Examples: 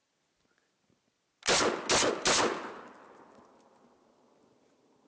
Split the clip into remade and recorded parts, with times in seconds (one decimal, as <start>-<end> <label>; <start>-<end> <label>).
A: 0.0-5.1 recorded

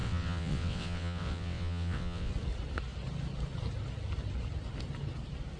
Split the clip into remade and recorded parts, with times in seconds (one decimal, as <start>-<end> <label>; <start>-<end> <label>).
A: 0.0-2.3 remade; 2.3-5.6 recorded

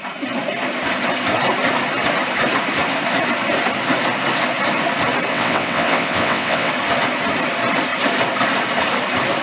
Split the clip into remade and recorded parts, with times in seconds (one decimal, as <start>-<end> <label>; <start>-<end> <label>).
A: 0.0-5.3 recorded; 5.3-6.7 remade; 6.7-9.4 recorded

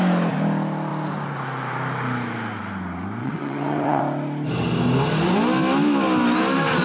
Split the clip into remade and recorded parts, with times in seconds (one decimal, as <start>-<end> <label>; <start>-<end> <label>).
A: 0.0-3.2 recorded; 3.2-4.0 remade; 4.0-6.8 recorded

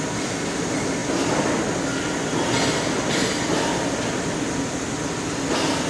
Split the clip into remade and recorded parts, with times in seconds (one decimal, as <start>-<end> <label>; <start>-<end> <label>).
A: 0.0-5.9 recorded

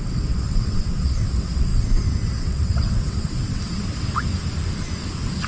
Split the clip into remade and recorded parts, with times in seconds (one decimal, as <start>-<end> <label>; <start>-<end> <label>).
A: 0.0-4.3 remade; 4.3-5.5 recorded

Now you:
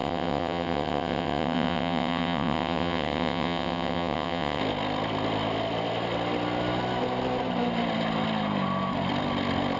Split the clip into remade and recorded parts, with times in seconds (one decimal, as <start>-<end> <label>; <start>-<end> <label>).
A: 0.0-4.6 remade; 4.6-9.8 recorded

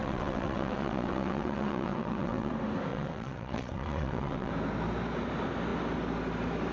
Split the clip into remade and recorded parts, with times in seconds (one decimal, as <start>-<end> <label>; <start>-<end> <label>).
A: 0.0-2.5 remade; 2.5-2.9 recorded; 2.9-4.5 remade; 4.5-6.7 recorded